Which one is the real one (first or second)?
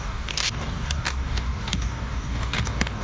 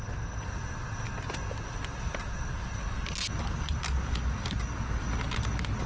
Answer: second